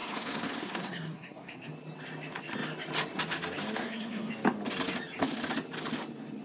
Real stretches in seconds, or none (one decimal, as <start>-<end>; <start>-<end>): 1.7-3.8; 4.3-6.4